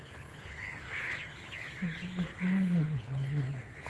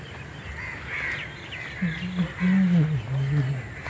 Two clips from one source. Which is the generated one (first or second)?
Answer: first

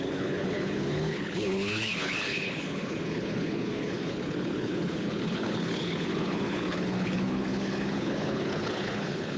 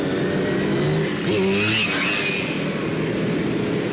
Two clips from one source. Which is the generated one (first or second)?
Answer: first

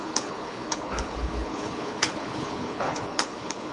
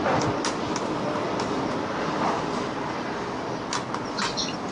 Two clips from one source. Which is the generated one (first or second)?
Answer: first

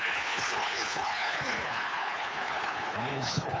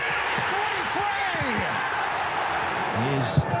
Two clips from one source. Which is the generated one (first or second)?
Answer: first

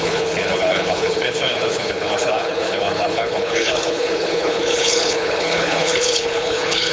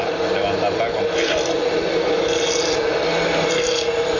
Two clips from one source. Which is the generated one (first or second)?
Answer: first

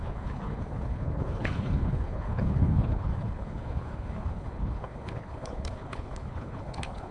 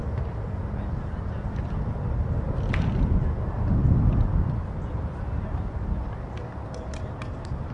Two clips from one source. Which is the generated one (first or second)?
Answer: first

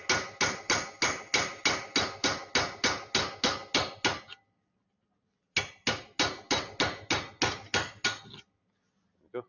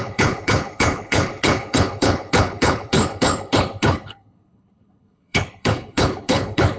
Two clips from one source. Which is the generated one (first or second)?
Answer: second